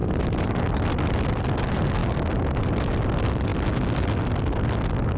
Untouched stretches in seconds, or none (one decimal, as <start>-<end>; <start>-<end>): 0.0-5.2